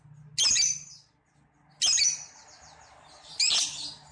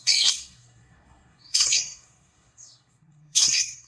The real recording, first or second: first